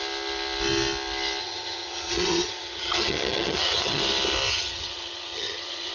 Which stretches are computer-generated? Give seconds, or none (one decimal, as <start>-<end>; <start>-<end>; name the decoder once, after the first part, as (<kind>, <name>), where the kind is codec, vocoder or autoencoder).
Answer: 1.4-4.0 (vocoder, HiFi-GAN); 4.5-5.9

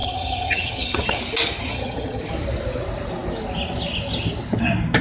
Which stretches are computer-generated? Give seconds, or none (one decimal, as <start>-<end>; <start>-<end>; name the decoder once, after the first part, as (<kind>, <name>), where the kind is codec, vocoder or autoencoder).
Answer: 0.0-1.2 (vocoder, HiFi-GAN); 1.7-2.2